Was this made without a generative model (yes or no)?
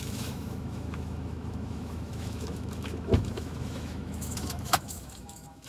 no